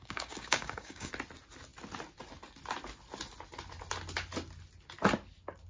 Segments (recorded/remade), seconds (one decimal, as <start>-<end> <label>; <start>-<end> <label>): 0.0-1.1 remade; 1.1-5.7 recorded